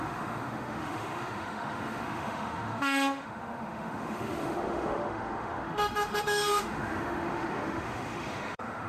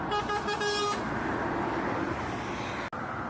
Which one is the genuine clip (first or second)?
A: second